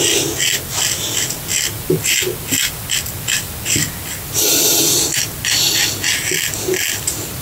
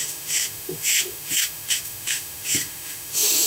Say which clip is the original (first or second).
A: first